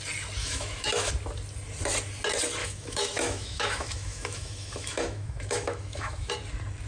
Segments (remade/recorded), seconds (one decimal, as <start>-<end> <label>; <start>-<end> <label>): 0.0-0.4 recorded; 0.4-1.1 remade; 1.1-2.6 recorded; 2.6-6.3 remade; 6.3-6.9 recorded